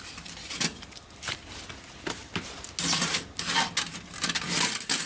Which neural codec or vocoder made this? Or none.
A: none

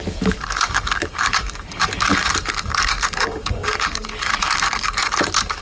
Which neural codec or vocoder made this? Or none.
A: codec, DAC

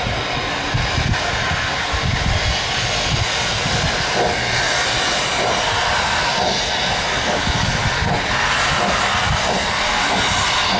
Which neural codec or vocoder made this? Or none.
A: none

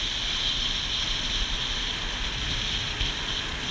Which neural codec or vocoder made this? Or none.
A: none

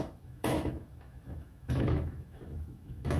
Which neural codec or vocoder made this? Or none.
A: autoencoder, DAC-VAE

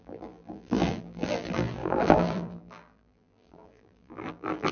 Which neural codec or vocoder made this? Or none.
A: vocoder, BigVGAN v2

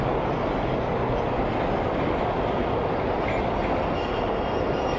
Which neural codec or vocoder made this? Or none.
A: none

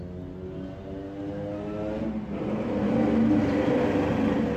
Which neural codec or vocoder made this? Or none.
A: none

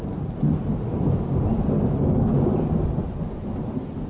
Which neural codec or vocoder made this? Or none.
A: none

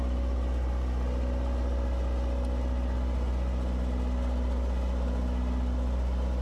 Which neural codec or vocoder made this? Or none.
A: none